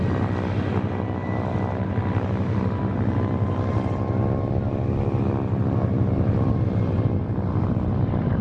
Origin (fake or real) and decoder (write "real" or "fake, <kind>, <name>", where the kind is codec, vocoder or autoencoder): real